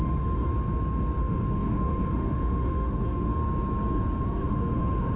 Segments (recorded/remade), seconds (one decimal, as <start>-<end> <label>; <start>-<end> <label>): 0.0-0.5 remade; 0.5-1.2 recorded; 1.2-3.3 remade; 3.3-4.2 recorded; 4.2-5.2 remade

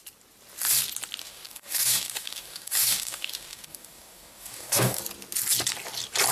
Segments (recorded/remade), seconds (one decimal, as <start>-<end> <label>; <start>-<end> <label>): 0.0-1.2 recorded; 1.2-5.0 remade; 5.0-6.3 recorded